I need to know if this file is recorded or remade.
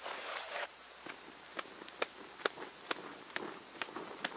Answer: recorded